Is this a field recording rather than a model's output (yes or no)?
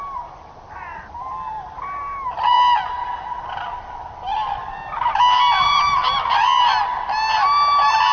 yes